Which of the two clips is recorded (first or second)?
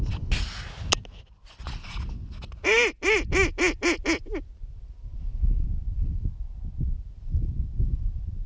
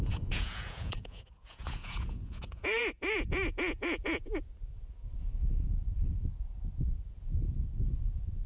first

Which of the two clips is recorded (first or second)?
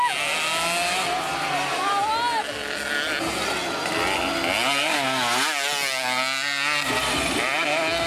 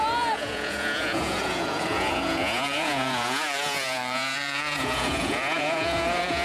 first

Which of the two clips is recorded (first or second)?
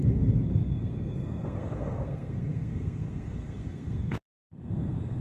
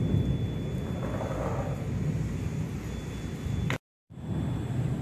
second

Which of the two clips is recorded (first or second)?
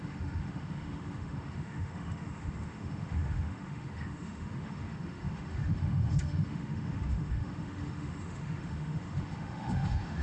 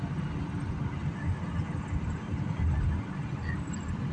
second